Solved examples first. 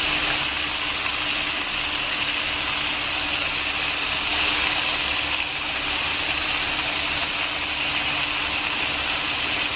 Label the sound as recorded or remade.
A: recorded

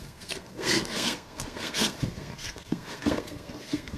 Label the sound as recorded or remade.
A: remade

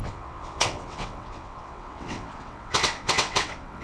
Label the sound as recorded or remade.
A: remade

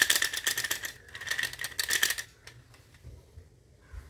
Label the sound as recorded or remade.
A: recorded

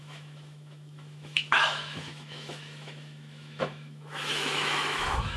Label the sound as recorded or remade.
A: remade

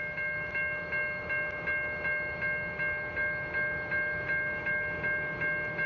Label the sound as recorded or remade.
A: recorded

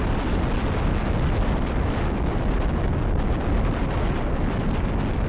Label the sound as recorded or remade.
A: recorded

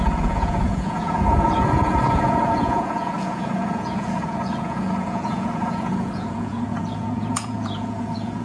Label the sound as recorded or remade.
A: remade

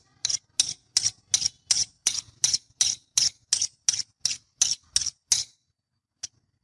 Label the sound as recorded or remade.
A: recorded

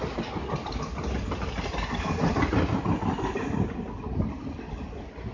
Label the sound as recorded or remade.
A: recorded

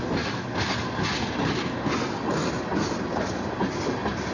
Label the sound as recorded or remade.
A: recorded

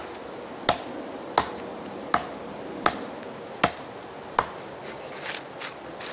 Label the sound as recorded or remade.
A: recorded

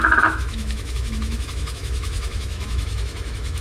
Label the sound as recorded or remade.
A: remade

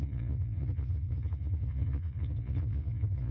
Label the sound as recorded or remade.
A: remade